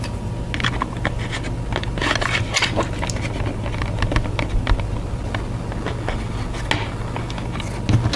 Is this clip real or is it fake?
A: real